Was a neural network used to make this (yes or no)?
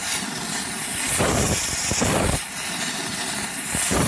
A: no